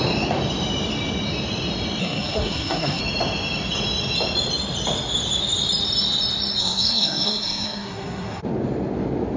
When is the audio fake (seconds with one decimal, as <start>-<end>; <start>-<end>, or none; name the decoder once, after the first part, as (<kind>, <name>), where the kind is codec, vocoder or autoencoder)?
2.0-3.0 (codec, SNAC); 6.6-8.4